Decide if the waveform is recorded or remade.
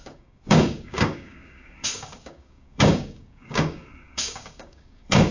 remade